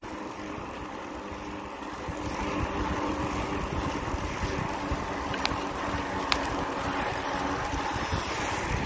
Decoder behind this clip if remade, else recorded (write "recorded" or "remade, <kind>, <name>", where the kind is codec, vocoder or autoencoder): recorded